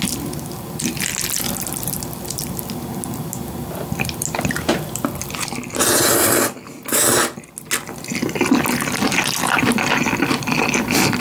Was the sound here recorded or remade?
recorded